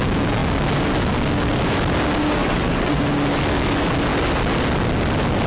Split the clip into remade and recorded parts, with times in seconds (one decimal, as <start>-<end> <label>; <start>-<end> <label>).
0.0-2.4 recorded; 2.4-3.0 remade; 3.0-5.5 recorded